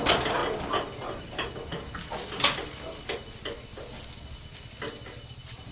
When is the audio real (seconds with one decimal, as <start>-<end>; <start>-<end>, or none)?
0.0-5.7